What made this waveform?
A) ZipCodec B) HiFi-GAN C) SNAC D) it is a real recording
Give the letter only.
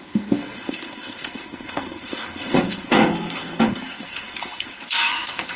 C